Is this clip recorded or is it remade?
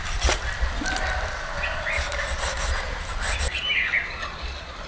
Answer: recorded